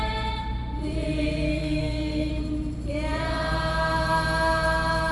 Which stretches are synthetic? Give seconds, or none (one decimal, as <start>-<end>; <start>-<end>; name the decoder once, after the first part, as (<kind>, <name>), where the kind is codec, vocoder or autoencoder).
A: 1.5-2.3 (codec, SNAC)